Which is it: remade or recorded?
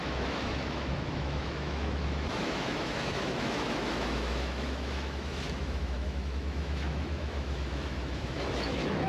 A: remade